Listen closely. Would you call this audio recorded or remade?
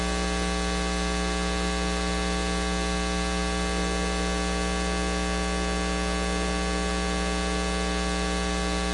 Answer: recorded